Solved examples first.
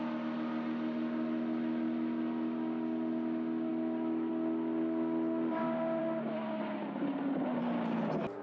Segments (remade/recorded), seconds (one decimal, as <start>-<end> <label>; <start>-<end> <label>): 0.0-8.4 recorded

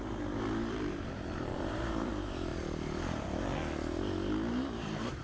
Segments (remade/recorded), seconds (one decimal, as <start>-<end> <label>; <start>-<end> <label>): 0.0-2.5 remade; 2.5-4.5 recorded; 4.5-5.2 remade

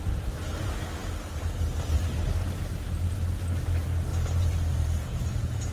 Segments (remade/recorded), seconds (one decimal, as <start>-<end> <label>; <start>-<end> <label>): 0.0-4.1 recorded; 4.1-5.7 remade

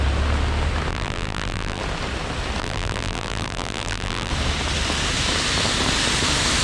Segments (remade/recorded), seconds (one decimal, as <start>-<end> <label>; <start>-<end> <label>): 0.0-0.9 recorded; 0.9-1.8 remade; 1.8-2.6 recorded; 2.6-4.3 remade; 4.3-6.6 recorded

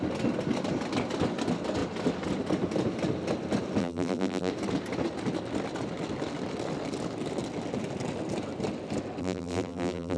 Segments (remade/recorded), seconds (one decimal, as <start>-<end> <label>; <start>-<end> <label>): 0.0-3.8 recorded; 3.8-4.5 remade; 4.5-9.2 recorded; 9.2-10.2 remade

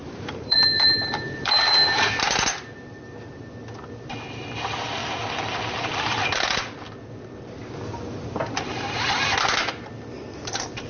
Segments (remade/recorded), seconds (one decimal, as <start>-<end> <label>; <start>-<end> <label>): 0.0-1.5 remade; 1.5-10.9 recorded

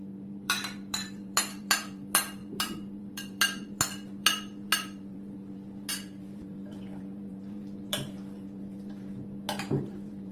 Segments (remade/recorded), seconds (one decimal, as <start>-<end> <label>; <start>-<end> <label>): 0.0-10.3 remade